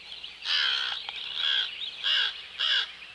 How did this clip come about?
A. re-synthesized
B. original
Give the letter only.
B